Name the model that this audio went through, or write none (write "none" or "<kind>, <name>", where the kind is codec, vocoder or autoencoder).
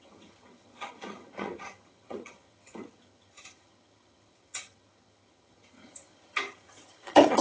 vocoder, HiFi-GAN